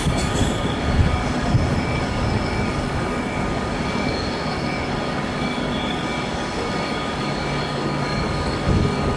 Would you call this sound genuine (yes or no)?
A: no